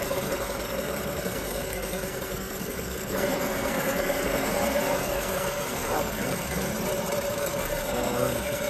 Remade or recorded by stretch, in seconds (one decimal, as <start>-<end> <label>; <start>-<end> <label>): 0.0-6.7 remade; 6.7-7.3 recorded; 7.3-8.7 remade

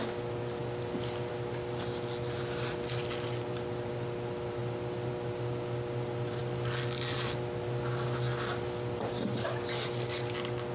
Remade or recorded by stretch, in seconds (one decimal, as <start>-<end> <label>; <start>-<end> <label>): 0.0-10.7 recorded